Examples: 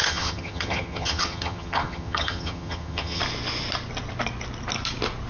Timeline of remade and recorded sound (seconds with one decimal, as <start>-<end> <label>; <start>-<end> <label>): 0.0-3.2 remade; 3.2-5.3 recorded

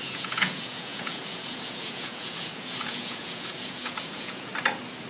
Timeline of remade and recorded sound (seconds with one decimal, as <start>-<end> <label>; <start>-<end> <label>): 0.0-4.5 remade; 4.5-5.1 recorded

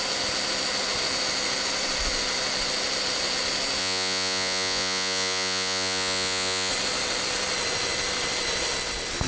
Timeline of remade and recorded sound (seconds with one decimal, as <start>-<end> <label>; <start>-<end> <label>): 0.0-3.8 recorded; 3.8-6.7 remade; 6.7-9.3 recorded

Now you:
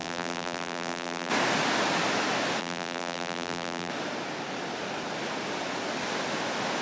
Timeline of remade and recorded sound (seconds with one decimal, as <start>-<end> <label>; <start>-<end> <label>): 0.0-1.3 remade; 1.3-2.6 recorded; 2.6-3.9 remade; 3.9-6.8 recorded